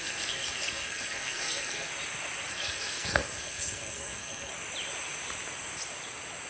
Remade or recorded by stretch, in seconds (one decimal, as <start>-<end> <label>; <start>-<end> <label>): 0.0-1.9 remade; 1.9-2.5 recorded; 2.5-4.5 remade; 4.5-6.5 recorded

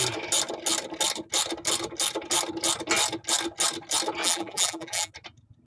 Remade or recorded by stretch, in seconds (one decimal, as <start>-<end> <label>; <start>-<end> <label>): 0.0-4.2 recorded; 4.2-5.1 remade; 5.1-5.7 recorded

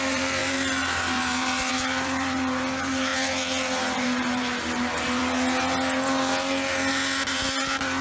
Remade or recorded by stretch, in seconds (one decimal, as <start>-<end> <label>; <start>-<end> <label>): 0.0-3.1 remade; 3.1-4.0 recorded; 4.0-5.2 remade; 5.2-8.0 recorded

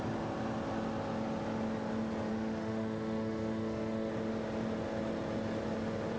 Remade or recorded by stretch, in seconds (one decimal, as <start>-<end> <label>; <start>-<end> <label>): 0.0-2.3 recorded; 2.3-4.1 remade; 4.1-6.2 recorded